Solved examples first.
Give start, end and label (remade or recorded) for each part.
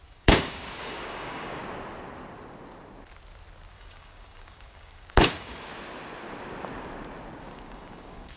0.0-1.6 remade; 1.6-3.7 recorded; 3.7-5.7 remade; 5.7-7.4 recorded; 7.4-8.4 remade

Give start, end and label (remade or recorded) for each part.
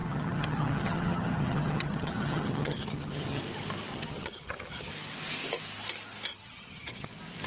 0.0-3.4 remade; 3.4-3.9 recorded; 3.9-4.9 remade; 4.9-6.3 recorded; 6.3-7.1 remade; 7.1-7.5 recorded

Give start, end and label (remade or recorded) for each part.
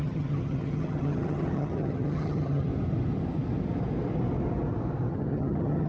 0.0-2.7 remade; 2.7-5.1 recorded; 5.1-5.9 remade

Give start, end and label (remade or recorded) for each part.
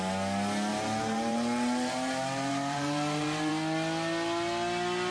0.0-0.7 recorded; 0.7-3.5 remade; 3.5-5.1 recorded